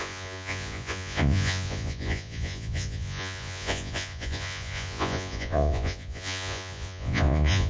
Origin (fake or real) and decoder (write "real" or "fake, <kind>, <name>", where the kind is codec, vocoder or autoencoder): fake, vocoder, Vocos